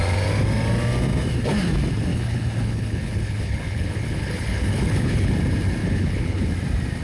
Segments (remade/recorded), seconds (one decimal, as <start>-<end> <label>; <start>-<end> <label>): 0.0-2.1 recorded; 2.1-5.3 remade; 5.3-5.8 recorded; 5.8-6.5 remade; 6.5-7.0 recorded